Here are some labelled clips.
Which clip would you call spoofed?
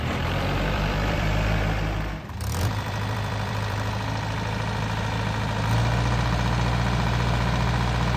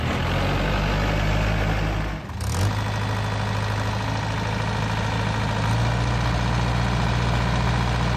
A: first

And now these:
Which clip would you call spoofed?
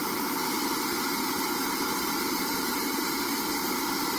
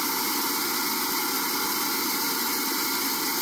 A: first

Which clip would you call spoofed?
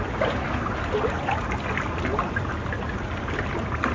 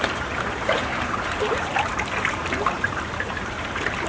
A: second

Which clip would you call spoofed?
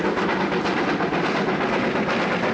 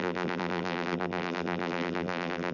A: second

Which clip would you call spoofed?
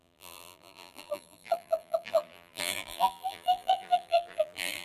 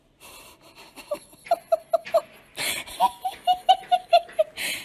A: first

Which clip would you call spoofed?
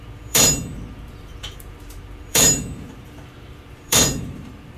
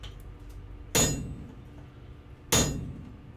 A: first